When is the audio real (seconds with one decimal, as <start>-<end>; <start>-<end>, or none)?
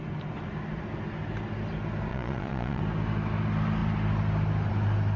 0.0-2.1; 2.8-5.2